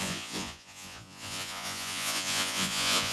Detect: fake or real fake